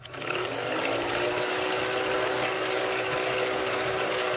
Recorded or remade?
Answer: remade